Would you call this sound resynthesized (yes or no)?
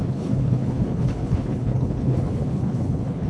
yes